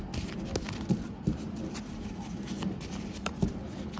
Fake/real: real